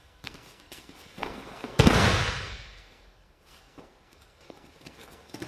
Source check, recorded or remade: remade